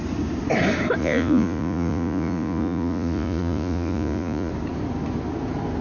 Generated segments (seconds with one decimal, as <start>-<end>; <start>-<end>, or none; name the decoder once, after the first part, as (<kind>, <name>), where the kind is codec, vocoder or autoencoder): 1.0-4.5 (vocoder, Vocos)